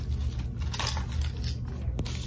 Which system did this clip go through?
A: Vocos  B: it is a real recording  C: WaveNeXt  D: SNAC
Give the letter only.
B